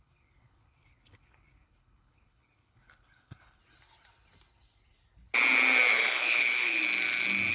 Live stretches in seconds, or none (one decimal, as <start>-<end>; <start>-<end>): 3.6-5.9; 6.8-7.5